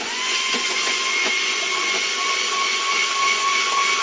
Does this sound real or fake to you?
fake